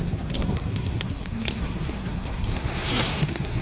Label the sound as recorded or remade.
remade